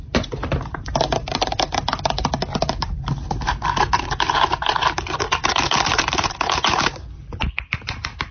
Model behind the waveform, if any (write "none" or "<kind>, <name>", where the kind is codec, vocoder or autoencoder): vocoder, BigVGAN v2